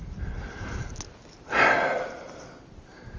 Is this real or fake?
real